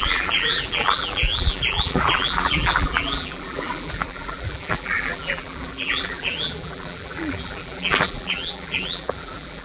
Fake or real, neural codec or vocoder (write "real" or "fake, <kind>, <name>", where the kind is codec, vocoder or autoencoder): fake, vocoder, BigVGAN v2